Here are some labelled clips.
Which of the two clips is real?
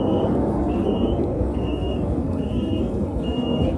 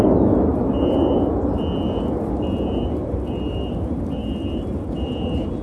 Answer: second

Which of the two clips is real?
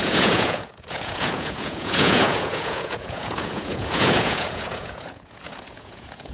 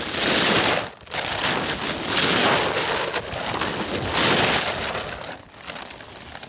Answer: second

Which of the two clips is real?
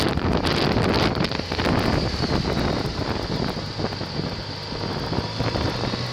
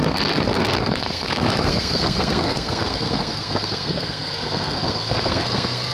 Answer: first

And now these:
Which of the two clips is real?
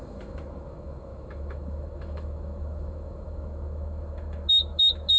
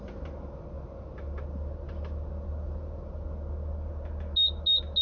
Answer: second